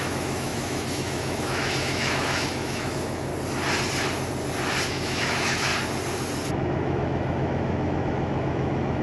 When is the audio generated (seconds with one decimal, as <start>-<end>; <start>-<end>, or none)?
0.0-3.3; 4.9-5.7; 6.5-9.0